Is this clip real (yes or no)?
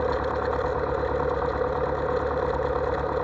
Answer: yes